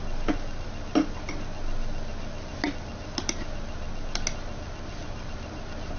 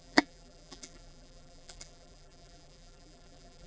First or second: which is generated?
second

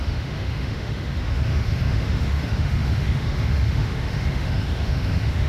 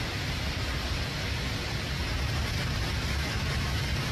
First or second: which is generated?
first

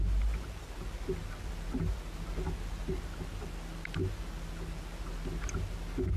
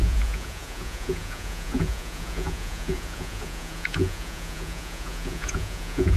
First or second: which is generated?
second